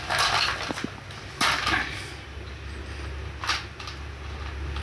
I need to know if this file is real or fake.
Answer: real